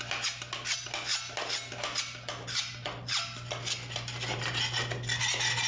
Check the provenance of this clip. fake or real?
real